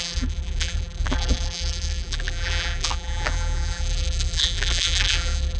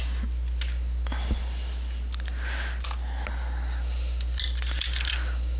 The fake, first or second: first